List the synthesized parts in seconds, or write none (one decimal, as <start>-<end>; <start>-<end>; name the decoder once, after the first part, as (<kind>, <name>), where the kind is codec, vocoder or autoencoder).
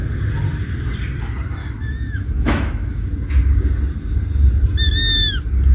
1.6-3.1 (autoencoder, DAC-VAE)